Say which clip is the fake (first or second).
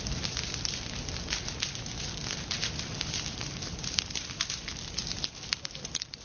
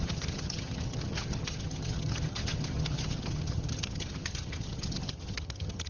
second